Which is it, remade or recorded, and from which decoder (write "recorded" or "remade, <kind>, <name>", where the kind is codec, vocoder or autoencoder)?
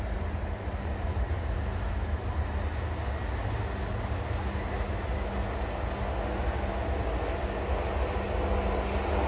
recorded